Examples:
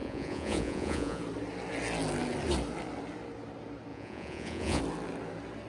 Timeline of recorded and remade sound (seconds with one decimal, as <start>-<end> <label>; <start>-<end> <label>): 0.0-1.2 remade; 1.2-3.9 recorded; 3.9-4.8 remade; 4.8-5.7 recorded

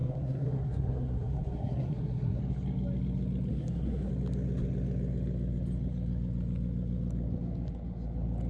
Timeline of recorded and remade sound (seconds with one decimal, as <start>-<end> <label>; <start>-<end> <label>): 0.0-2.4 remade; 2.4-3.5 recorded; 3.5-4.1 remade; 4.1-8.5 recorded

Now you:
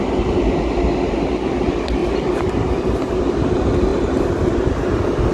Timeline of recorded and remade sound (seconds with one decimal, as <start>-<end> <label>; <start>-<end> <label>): 0.0-5.3 recorded